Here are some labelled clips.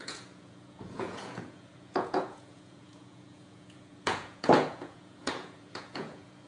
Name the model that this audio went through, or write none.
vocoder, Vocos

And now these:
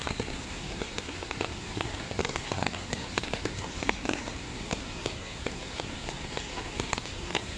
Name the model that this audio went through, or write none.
codec, SNAC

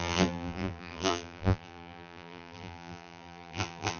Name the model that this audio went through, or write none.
vocoder, BigVGAN v2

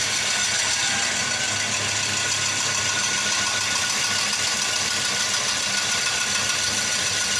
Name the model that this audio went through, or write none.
none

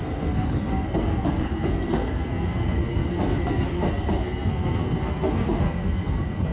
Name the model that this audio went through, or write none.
codec, SNAC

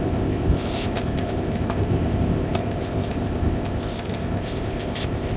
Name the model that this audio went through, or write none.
codec, ZipCodec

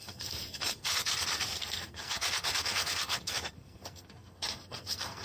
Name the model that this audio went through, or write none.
codec, SNAC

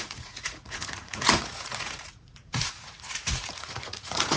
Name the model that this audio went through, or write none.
vocoder, Vocos